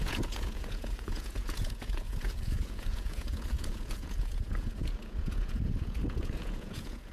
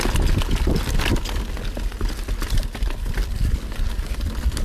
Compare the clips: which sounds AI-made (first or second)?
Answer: first